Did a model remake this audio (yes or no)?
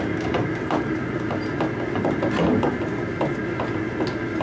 no